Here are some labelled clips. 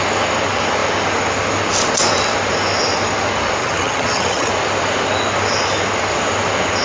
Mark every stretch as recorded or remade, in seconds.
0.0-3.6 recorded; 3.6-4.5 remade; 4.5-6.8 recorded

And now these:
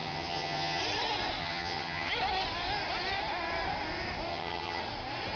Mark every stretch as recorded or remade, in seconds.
0.0-0.8 remade; 0.8-1.4 recorded; 1.4-2.1 remade; 2.1-4.3 recorded; 4.3-4.8 remade; 4.8-5.4 recorded

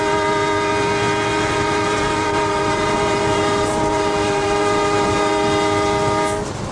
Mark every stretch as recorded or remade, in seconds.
0.0-1.3 recorded; 1.3-5.3 remade; 5.3-6.7 recorded

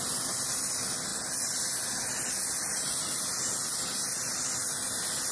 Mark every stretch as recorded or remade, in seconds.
0.0-5.3 recorded

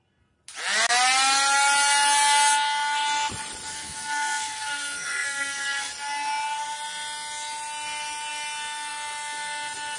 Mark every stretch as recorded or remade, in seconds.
0.0-3.7 recorded; 3.7-5.9 remade; 5.9-10.0 recorded

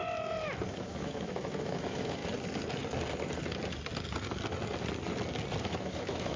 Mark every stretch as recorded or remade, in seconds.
0.0-0.7 recorded; 0.7-2.2 remade; 2.2-5.6 recorded; 5.6-6.4 remade